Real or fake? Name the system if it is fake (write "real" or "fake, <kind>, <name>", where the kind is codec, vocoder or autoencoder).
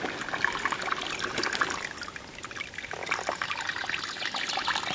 real